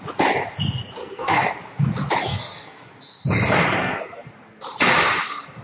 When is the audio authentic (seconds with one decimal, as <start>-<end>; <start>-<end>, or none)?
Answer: 0.0-1.0; 1.5-2.3; 2.9-3.8; 4.3-5.6